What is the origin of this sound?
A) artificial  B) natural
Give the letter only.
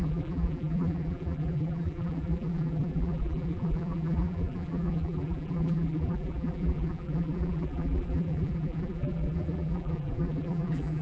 A